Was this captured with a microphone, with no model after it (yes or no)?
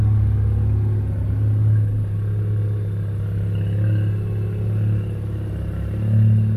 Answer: yes